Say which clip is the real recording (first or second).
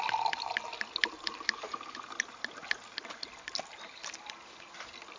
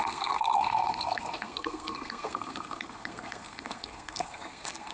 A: first